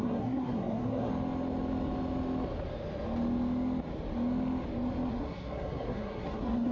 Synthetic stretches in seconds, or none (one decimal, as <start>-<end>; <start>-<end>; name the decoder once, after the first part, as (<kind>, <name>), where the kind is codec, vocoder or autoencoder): 0.0-1.1 (codec, SNAC); 5.1-6.7